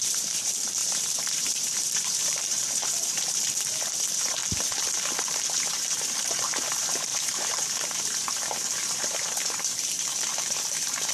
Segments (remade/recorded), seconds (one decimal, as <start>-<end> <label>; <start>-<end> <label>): 0.0-4.4 remade; 4.4-5.2 recorded; 5.2-11.1 remade